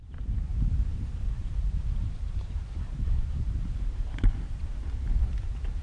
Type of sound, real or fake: fake